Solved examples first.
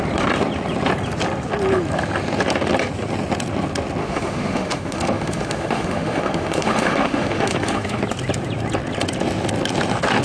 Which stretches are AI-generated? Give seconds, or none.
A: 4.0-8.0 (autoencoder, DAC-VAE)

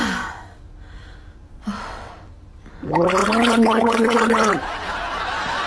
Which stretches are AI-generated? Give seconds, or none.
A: 1.5-2.1 (vocoder, WaveNeXt); 3.2-4.5

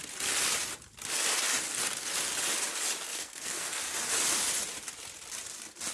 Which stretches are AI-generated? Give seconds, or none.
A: 3.1-3.8 (codec, SNAC)

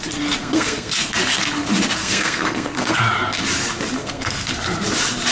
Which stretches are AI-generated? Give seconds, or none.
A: 0.4-1.1 (codec, SNAC); 2.0-3.0; 4.0-4.5

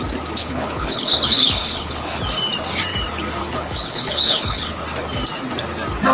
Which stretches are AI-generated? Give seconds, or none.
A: 0.4-2.2 (codec, HILCodec); 3.4-4.8